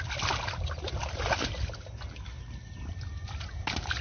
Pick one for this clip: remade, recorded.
recorded